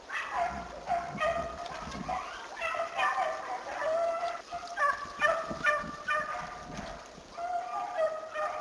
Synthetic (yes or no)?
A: no